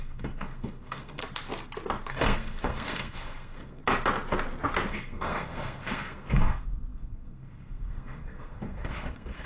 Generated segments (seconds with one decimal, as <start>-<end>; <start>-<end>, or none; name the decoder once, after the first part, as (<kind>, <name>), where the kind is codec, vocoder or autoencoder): 0.0-1.2 (codec, SNAC); 2.1-3.8; 4.9-9.5